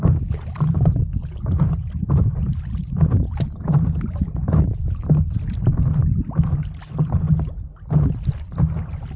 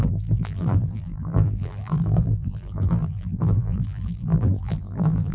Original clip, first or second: first